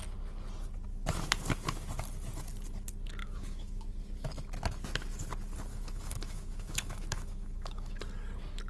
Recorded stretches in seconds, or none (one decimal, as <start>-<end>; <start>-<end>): 0.0-3.2; 3.9-5.7; 8.0-8.7